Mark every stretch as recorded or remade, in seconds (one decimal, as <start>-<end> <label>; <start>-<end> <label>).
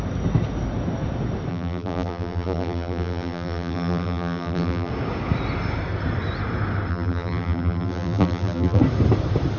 0.0-1.5 recorded; 1.5-4.9 remade; 4.9-6.9 recorded; 6.9-8.8 remade; 8.8-9.6 recorded